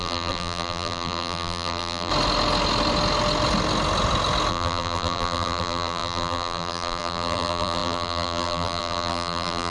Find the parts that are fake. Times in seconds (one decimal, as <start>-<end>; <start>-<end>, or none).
0.0-2.1; 4.5-9.7